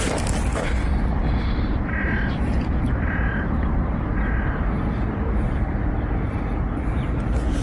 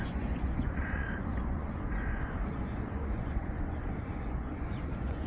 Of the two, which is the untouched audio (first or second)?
first